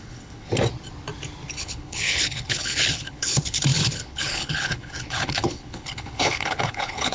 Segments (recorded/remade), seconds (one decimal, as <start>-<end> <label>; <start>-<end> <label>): 0.0-0.5 remade; 0.5-1.6 recorded; 1.6-7.1 remade